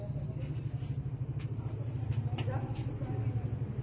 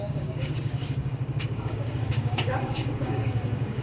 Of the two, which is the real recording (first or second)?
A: first